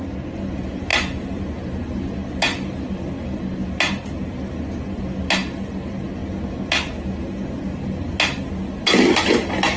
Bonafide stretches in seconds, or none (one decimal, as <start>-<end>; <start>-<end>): 0.0-9.8